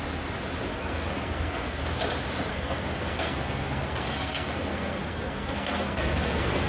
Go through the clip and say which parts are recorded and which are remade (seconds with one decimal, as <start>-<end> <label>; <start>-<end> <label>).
0.0-0.7 recorded; 0.7-1.8 remade; 1.8-2.5 recorded; 2.5-6.7 remade